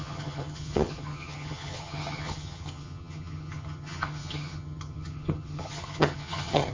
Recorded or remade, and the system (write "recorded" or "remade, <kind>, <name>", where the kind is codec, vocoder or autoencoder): remade, vocoder, HiFi-GAN